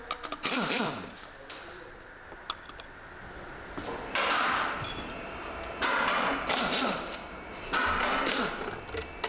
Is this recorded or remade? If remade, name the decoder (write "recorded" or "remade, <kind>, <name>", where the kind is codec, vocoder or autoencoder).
remade, vocoder, BigVGAN v2